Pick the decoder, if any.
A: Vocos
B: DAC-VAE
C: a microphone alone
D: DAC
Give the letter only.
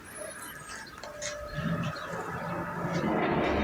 C